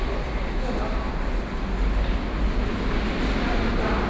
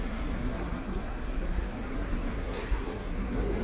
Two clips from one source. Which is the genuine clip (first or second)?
first